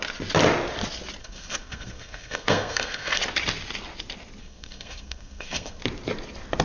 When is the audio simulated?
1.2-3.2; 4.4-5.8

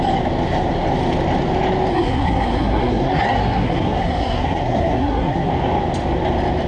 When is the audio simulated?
1.9-5.5

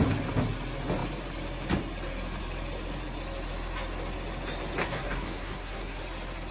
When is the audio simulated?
4.8-6.0